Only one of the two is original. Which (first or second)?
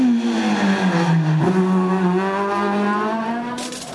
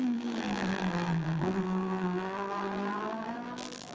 first